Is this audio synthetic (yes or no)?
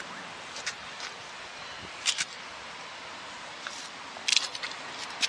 no